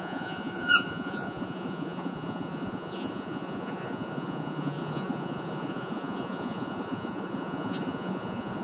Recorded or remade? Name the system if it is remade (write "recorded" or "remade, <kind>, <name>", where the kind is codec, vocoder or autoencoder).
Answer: remade, vocoder, Vocos